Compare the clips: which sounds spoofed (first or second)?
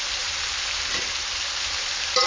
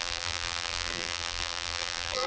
second